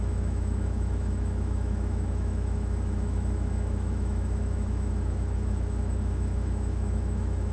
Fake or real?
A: fake